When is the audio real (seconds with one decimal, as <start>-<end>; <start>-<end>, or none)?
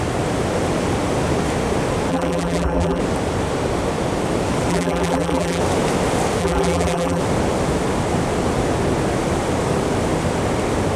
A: 0.0-2.1; 3.0-4.7; 5.6-6.4; 7.2-11.0